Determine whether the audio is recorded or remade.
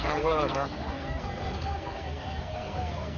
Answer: remade